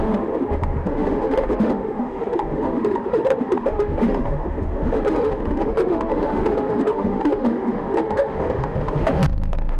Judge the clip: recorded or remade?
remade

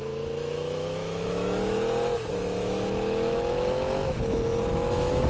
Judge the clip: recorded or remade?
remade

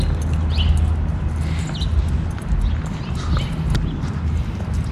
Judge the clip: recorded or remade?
recorded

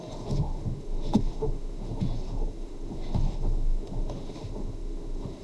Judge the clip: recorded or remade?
remade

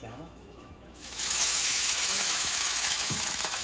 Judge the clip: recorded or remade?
remade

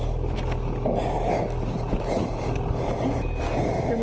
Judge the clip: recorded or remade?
recorded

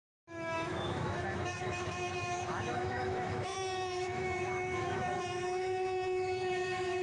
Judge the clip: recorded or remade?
remade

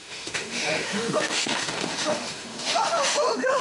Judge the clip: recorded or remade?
remade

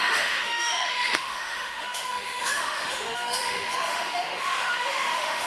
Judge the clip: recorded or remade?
remade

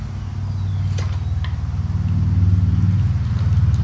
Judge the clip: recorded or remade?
recorded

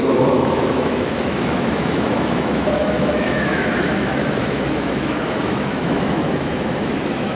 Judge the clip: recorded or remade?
remade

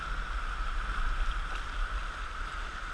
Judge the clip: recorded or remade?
recorded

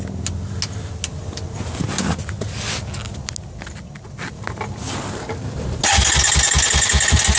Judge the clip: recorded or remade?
recorded